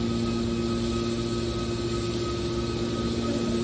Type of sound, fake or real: real